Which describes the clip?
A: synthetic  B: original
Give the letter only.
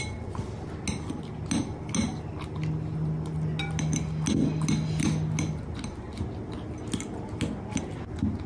B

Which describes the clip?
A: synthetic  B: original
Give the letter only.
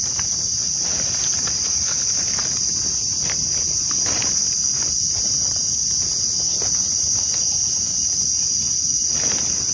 B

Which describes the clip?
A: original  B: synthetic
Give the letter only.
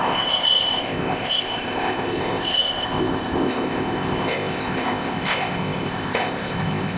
B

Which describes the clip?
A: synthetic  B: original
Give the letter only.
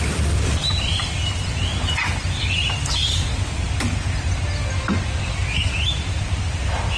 B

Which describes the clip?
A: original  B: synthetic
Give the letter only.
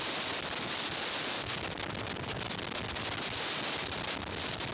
A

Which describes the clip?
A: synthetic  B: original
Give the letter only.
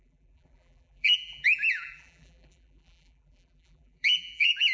A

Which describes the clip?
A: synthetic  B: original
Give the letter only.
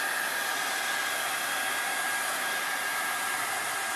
B